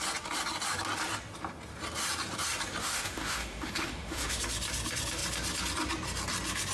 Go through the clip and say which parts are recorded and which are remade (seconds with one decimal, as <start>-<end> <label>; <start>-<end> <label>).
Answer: 0.0-2.8 recorded; 2.8-4.4 remade; 4.4-6.7 recorded